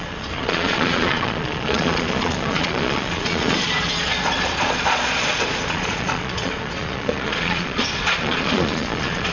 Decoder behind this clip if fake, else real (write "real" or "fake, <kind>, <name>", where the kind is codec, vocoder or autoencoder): fake, vocoder, Vocos